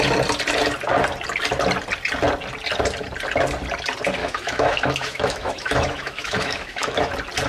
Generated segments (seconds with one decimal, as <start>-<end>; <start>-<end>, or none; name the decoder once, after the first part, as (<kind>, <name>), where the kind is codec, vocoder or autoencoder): 4.2-7.1 (autoencoder, DAC-VAE)